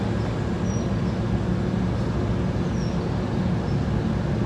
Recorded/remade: recorded